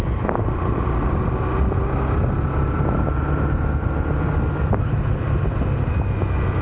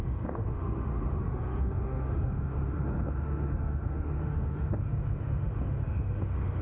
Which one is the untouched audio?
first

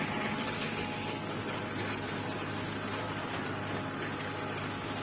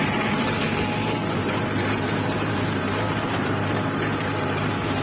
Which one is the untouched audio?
first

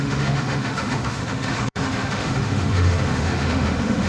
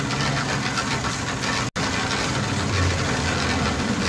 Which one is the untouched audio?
second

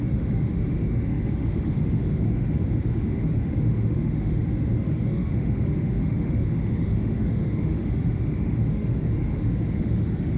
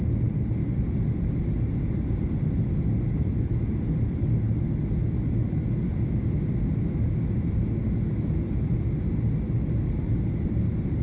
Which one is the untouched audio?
second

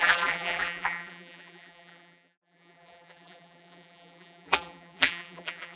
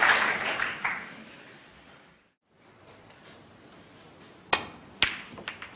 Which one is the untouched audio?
second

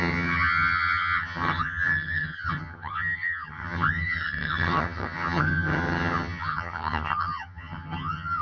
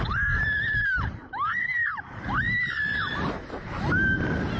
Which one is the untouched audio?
second